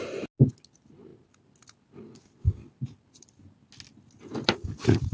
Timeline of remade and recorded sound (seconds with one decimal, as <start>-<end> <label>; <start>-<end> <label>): 0.0-5.1 recorded